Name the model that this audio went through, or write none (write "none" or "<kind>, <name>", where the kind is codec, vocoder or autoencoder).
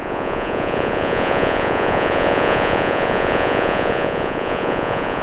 vocoder, Vocos